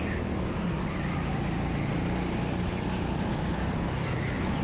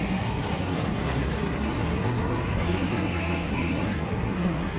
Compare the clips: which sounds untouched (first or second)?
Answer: first